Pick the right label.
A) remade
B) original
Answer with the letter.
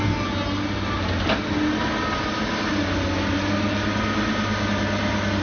B